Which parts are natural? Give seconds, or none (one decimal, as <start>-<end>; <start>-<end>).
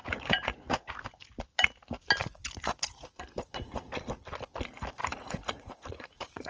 1.0-2.2; 3.8-5.0